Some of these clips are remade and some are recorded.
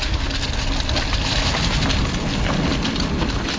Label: recorded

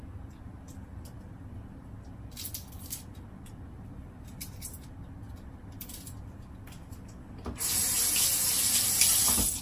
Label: recorded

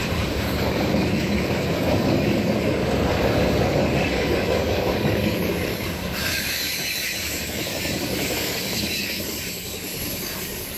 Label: remade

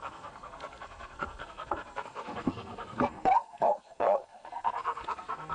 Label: remade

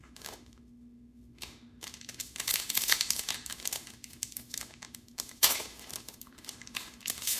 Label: remade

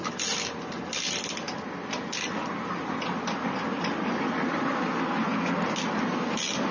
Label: recorded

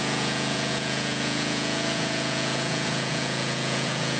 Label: remade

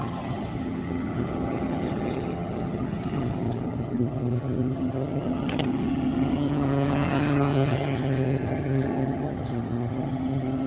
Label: remade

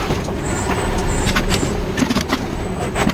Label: recorded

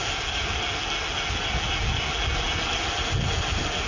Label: recorded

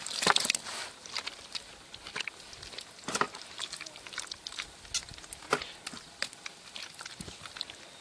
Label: recorded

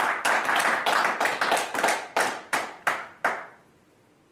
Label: recorded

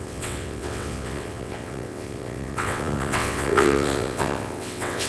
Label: remade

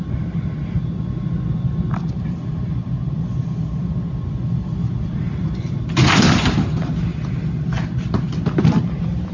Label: recorded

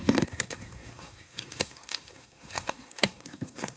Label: remade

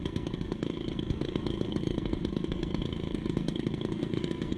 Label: remade